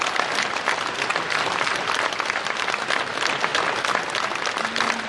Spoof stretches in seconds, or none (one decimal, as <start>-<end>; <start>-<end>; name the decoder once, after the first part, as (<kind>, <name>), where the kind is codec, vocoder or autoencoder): none